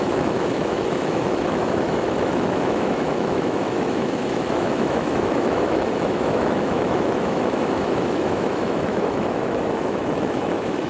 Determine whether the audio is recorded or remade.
remade